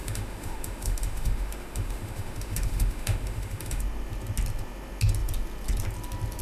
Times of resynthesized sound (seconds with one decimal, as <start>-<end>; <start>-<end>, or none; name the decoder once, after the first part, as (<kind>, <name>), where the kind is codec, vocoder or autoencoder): 0.0-3.8 (autoencoder, DAC-VAE)